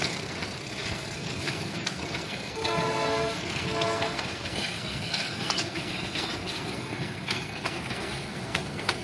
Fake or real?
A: fake